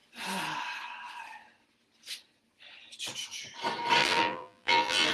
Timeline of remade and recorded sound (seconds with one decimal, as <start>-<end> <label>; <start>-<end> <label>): 0.0-4.0 recorded; 4.0-5.1 remade